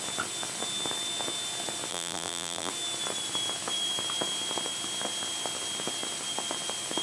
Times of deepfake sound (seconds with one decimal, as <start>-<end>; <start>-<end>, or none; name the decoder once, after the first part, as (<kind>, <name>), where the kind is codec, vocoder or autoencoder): 1.9-2.7 (vocoder, BigVGAN v2)